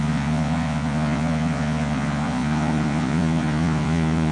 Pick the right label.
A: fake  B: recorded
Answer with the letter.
A